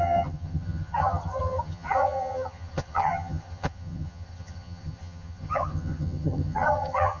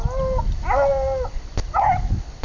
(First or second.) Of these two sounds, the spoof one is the first